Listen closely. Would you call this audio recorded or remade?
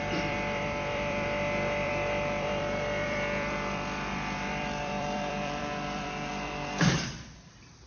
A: remade